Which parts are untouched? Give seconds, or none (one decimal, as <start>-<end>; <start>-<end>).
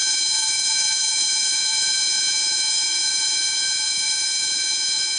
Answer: none